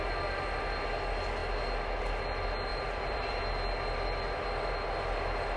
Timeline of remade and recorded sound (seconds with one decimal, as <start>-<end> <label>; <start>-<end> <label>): 0.0-2.7 recorded; 2.7-3.4 remade; 3.4-5.6 recorded